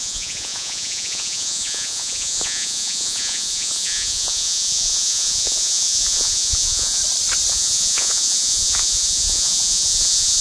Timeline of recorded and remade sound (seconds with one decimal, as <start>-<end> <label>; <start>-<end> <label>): 0.0-7.0 remade; 7.0-7.5 recorded; 7.5-10.4 remade